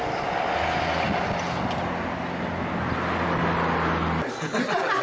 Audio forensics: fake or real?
real